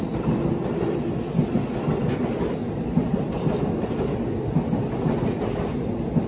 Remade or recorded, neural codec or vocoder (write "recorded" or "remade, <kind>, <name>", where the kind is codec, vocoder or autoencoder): recorded